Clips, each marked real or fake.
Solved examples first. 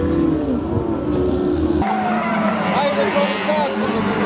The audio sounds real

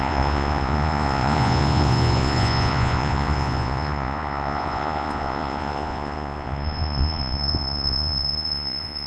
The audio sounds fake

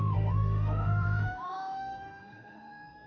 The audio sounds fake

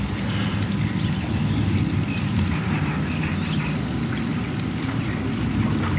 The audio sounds real